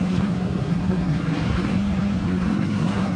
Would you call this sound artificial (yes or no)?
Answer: yes